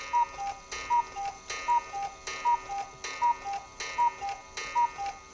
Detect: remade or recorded recorded